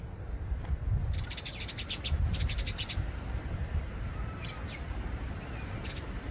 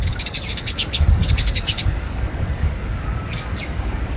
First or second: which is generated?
second